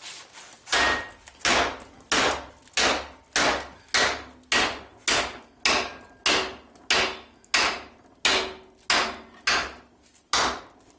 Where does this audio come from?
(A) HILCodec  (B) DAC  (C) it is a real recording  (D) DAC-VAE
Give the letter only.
C